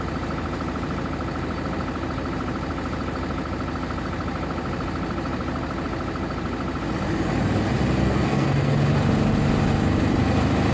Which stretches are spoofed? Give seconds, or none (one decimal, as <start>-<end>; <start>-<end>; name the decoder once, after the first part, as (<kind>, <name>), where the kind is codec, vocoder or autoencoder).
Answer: 8.0-8.7 (codec, SNAC)

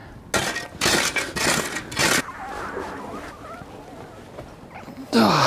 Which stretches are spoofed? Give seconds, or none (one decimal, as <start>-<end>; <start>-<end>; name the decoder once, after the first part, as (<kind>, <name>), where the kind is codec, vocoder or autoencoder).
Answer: none

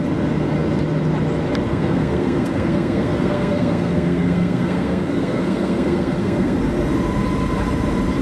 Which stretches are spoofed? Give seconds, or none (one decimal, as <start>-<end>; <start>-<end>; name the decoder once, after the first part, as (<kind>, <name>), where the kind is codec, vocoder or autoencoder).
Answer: 1.7-6.6 (codec, SNAC)